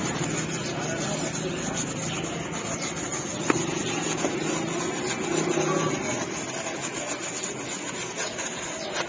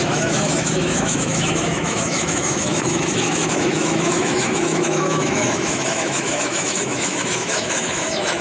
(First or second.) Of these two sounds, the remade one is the second